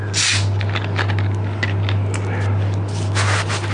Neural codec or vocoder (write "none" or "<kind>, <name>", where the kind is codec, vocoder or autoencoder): none